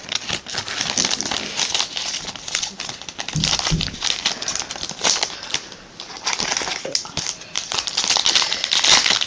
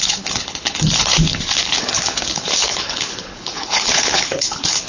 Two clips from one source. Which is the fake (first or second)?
second